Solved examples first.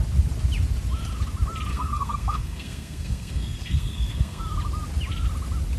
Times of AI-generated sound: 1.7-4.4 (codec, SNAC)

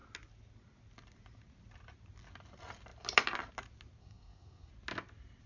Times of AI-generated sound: 4.0-4.7 (codec, SNAC)

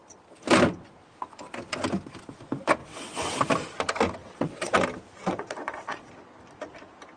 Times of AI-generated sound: 2.8-3.4 (vocoder, WaveNeXt); 4.2-4.8; 5.2-6.1